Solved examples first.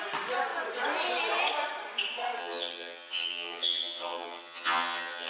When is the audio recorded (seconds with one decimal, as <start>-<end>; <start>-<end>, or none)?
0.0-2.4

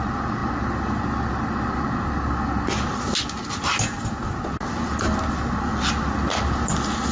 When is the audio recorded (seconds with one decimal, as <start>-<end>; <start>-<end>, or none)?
0.0-7.1

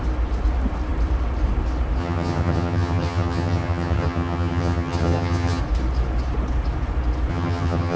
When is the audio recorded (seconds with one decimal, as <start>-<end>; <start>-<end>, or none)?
0.0-2.0; 5.6-7.3

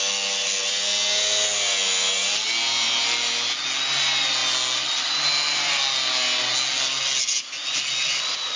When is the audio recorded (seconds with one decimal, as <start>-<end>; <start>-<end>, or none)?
0.0-8.6